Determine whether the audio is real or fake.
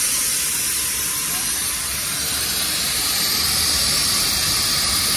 real